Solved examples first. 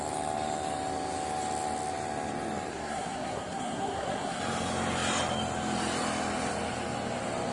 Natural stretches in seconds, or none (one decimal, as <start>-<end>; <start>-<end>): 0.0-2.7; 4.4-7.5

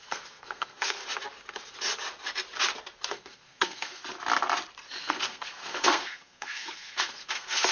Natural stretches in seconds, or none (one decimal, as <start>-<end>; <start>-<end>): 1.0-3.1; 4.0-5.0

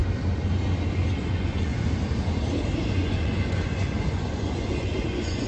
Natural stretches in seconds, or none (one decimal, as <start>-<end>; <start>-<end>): 0.0-1.2; 1.7-2.9